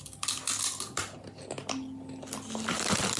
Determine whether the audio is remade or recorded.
recorded